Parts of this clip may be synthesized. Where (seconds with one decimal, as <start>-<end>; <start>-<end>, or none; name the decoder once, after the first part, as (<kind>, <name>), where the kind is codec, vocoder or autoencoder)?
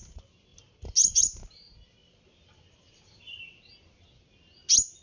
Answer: none